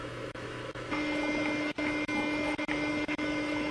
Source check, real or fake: fake